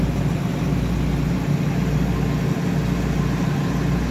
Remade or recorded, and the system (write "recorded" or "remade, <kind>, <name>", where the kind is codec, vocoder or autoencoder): recorded